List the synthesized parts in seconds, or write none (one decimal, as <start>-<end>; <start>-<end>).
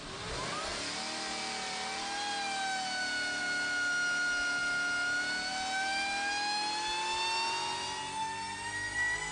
none